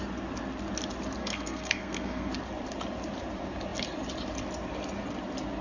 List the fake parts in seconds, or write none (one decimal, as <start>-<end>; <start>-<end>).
1.2-2.3